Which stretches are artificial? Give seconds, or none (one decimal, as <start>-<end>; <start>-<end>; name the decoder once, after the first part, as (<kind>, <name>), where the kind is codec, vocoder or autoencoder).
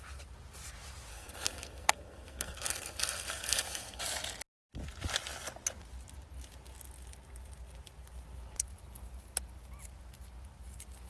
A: 1.1-4.0 (codec, SNAC)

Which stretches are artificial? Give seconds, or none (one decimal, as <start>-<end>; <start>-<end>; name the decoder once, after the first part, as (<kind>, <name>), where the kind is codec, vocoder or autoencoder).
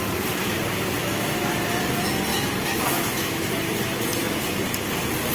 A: 1.0-1.5 (autoencoder, DAC-VAE); 2.3-3.5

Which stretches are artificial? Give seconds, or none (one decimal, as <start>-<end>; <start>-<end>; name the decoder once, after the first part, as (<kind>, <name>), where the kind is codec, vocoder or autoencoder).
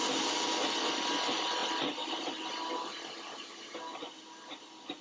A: none